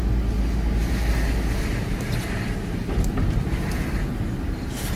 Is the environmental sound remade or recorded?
recorded